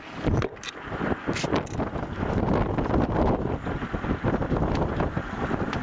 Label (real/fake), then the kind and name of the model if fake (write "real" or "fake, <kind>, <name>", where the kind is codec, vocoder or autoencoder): real